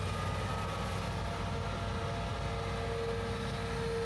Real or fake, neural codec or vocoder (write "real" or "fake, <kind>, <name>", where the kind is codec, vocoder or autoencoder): real